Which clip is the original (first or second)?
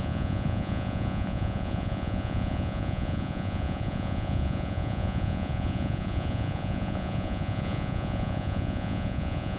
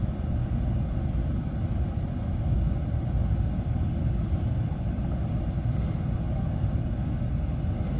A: second